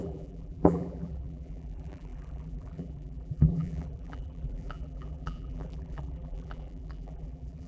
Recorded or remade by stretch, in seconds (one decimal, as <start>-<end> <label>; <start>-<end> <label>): 0.0-7.7 remade